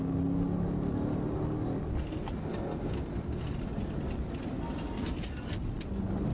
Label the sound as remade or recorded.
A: recorded